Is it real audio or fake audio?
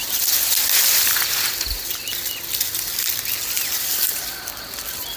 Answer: real